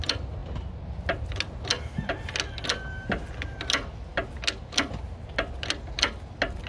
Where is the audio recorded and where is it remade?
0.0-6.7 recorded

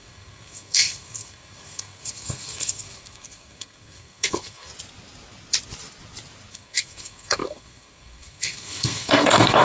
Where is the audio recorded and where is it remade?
0.0-4.7 remade; 4.7-6.5 recorded; 6.5-9.6 remade

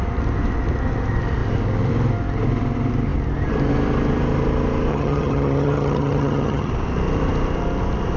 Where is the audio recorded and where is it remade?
0.0-4.9 recorded; 4.9-6.7 remade; 6.7-8.2 recorded

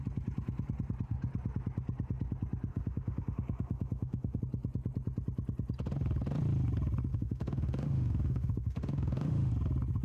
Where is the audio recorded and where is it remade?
0.0-2.7 recorded; 2.7-4.4 remade; 4.4-7.1 recorded; 7.1-9.5 remade; 9.5-10.0 recorded

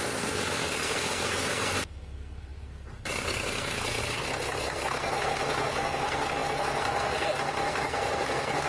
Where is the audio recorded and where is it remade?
0.0-8.7 remade

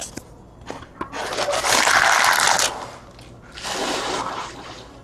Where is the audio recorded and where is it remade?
0.0-0.9 remade; 0.9-3.8 recorded; 3.8-5.0 remade

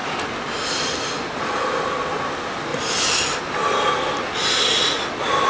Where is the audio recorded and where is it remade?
0.0-5.5 recorded